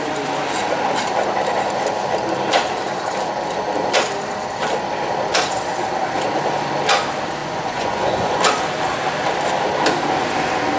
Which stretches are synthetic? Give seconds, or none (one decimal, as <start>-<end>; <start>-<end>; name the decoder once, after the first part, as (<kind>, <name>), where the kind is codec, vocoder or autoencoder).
7.4-8.4 (vocoder, Vocos)